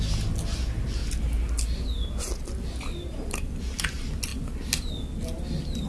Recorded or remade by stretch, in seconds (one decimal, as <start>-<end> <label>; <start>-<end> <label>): 0.0-5.9 recorded